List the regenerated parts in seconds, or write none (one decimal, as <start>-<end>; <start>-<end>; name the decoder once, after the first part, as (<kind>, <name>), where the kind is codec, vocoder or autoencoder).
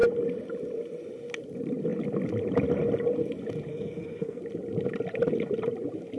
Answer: 3.7-4.4 (codec, SNAC)